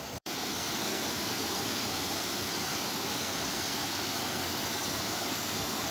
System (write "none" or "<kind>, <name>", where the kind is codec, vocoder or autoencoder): codec, SNAC